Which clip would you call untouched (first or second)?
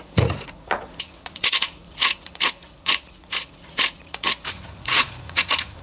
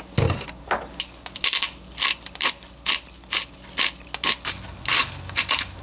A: second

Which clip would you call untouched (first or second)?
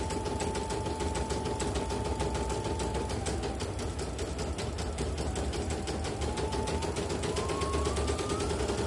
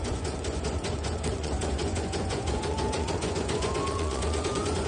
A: first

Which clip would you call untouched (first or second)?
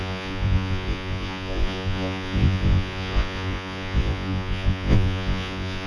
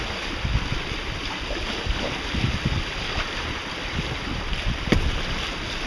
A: second